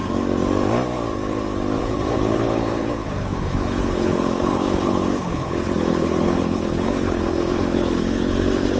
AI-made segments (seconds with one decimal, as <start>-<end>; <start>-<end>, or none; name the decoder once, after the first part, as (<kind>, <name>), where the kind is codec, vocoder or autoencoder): 1.8-8.8 (codec, HILCodec)